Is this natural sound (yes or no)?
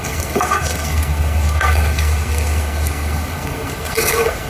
no